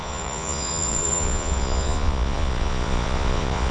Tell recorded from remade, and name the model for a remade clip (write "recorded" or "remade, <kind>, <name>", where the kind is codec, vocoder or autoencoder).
remade, vocoder, Vocos